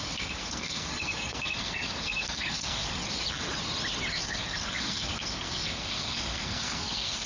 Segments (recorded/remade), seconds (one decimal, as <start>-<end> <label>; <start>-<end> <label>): 0.0-3.0 remade; 3.0-4.1 recorded; 4.1-7.3 remade